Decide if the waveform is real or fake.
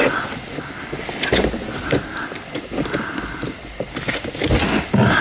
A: real